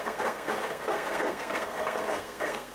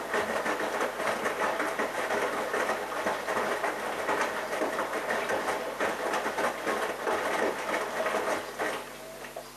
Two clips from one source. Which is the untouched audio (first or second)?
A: second